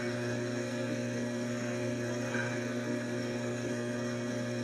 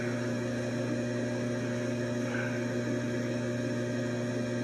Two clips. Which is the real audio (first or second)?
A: second